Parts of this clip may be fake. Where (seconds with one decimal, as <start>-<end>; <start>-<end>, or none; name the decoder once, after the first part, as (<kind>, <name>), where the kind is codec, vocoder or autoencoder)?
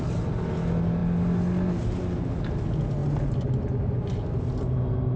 none